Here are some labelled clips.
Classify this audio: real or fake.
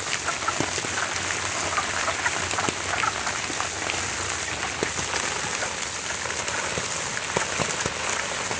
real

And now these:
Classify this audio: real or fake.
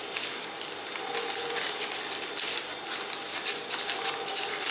fake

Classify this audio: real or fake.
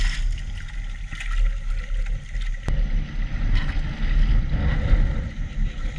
real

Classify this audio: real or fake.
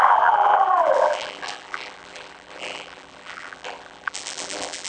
fake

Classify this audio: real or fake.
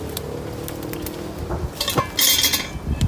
real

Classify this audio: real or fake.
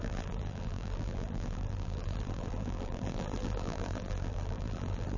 fake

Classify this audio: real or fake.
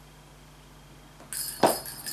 real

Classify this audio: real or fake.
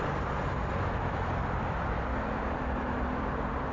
real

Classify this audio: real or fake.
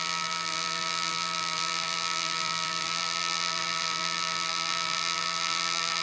fake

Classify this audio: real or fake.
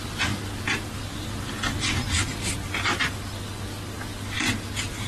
real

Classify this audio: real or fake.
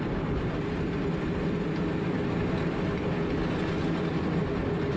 real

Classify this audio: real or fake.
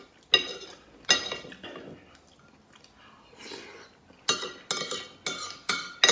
real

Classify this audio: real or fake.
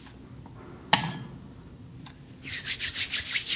fake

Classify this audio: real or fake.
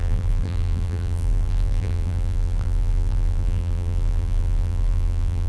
fake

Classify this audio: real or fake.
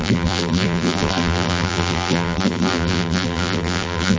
fake